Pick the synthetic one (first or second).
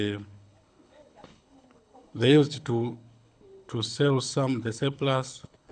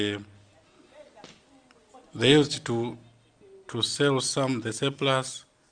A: first